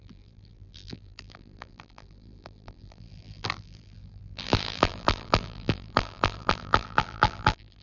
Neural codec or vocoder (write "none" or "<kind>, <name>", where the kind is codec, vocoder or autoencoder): vocoder, BigVGAN v2